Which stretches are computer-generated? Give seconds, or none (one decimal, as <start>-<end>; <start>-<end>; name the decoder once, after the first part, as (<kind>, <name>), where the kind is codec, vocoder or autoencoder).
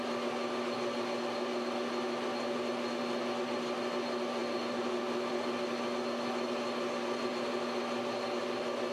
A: none